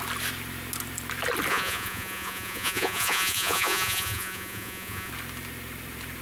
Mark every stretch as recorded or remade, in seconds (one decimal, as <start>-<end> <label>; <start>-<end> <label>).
0.0-1.5 recorded; 1.5-5.1 remade; 5.1-6.2 recorded